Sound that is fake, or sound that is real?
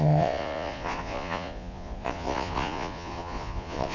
fake